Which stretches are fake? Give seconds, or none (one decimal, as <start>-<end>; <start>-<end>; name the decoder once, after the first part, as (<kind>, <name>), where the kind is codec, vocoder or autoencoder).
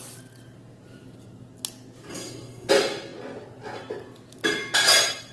2.1-2.7 (codec, SNAC)